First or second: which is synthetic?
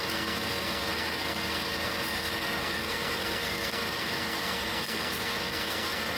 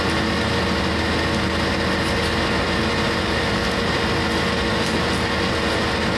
first